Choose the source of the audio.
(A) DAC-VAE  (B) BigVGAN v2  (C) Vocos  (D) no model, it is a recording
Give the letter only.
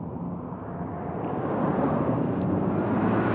D